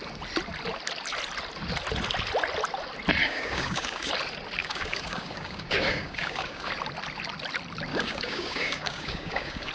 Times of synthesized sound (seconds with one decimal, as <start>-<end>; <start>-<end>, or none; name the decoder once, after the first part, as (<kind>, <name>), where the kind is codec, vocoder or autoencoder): 3.2-4.1 (codec, DAC); 4.6-6.7; 7.9-9.7